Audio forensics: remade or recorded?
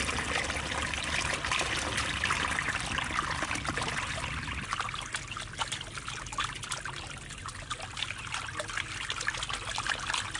recorded